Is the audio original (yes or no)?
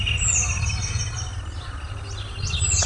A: yes